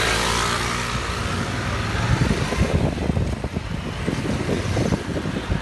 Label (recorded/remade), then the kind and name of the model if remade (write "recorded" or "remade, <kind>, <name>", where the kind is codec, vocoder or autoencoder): recorded